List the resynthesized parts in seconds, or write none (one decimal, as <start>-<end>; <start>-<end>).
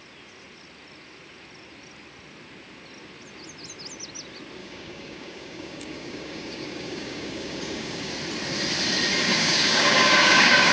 4.6-8.1; 9.3-10.7